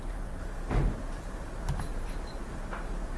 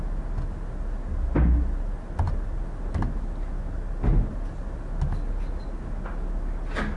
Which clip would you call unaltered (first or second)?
second